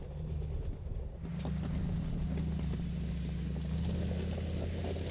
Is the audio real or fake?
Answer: real